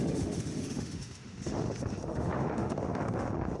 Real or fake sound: fake